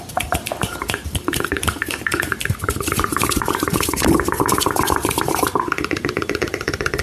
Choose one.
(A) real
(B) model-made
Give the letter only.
B